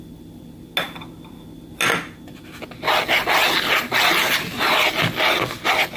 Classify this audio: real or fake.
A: real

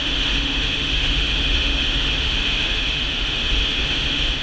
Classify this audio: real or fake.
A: fake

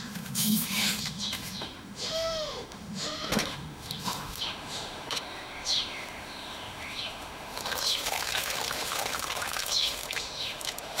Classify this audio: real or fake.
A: fake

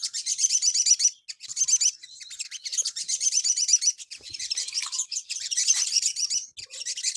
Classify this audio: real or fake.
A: real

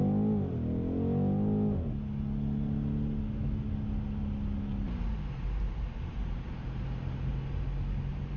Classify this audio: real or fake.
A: real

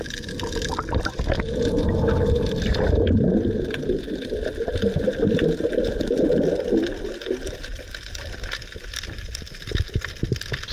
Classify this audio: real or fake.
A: real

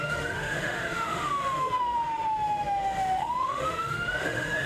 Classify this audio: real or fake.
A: fake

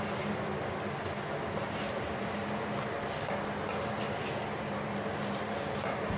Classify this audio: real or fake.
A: real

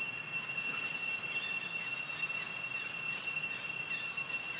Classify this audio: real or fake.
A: real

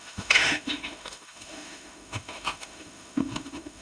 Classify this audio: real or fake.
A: fake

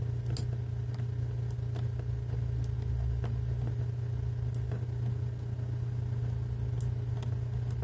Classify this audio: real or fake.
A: real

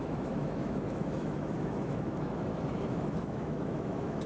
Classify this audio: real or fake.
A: fake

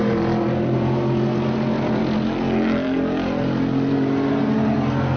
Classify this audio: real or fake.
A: real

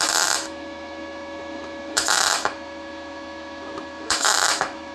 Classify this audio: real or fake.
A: fake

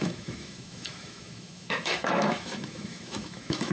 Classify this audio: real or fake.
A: fake